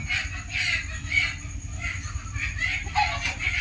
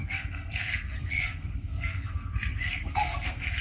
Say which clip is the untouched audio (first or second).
first